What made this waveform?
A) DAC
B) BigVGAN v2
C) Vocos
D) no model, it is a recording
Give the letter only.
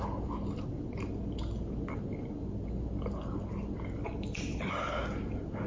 D